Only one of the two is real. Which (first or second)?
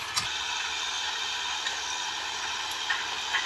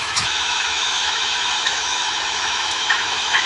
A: first